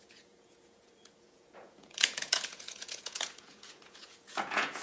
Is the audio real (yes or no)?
no